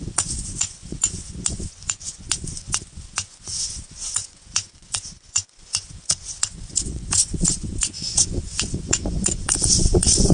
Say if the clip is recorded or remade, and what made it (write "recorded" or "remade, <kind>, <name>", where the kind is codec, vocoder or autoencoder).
remade, vocoder, Vocos